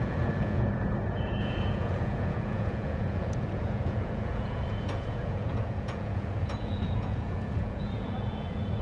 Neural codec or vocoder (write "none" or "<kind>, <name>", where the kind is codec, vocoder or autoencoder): vocoder, Vocos